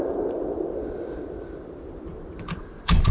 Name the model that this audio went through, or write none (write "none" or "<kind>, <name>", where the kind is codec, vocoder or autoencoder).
none